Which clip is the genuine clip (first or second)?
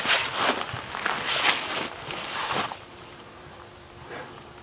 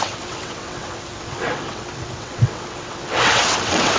first